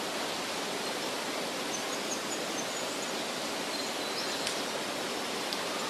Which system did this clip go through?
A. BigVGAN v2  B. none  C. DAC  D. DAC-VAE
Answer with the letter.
B